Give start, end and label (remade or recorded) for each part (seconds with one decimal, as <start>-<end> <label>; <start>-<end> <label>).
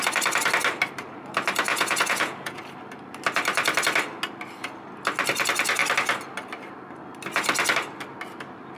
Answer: 0.0-1.7 recorded; 1.7-2.6 remade; 2.6-8.8 recorded